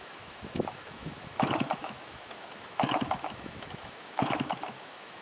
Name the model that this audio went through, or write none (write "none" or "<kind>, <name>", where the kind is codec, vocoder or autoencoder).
autoencoder, DAC-VAE